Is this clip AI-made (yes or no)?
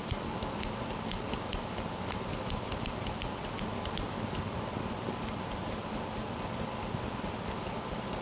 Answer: no